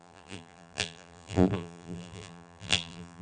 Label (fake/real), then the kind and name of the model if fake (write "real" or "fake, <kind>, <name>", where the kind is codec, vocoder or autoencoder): fake, vocoder, BigVGAN v2